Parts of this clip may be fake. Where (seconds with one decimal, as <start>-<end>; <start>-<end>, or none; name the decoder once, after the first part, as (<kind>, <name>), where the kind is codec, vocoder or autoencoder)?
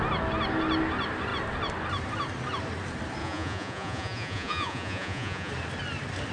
3.2-5.5 (vocoder, Vocos)